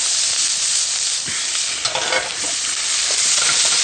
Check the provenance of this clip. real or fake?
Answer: real